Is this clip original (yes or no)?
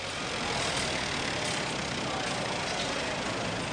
no